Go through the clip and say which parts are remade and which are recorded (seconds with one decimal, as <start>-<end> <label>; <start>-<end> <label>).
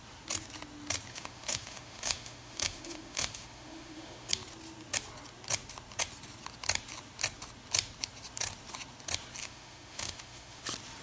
0.0-1.1 recorded; 1.1-4.3 remade; 4.3-9.4 recorded; 9.4-10.6 remade; 10.6-11.0 recorded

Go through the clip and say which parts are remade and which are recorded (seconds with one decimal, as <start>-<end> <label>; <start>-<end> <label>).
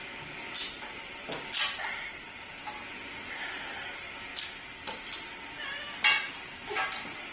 0.0-7.3 recorded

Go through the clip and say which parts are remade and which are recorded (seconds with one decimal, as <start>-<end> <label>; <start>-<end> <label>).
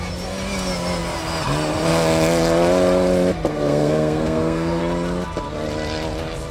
0.0-3.5 recorded; 3.5-4.8 remade; 4.8-6.5 recorded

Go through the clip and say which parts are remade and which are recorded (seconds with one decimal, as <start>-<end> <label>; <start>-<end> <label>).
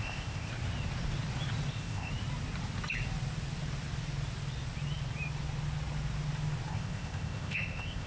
0.0-0.5 remade; 0.5-1.7 recorded; 1.7-2.1 remade; 2.1-6.7 recorded; 6.7-8.1 remade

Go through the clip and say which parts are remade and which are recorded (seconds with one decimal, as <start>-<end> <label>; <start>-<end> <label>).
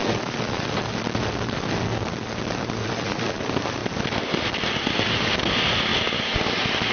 0.0-0.7 remade; 0.7-2.8 recorded; 2.8-3.4 remade; 3.4-6.9 recorded